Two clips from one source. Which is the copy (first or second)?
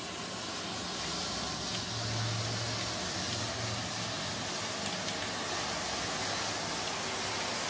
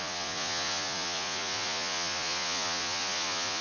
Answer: second